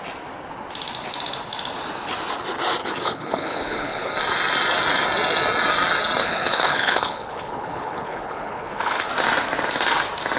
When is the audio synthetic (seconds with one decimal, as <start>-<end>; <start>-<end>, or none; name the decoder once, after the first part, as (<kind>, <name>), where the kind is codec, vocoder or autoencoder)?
2.8-4.1 (codec, HILCodec); 6.2-9.1